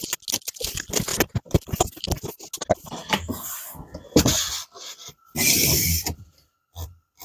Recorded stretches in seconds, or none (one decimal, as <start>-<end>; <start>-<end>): 0.0-1.1; 2.2-5.0